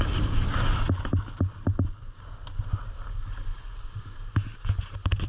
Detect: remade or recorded recorded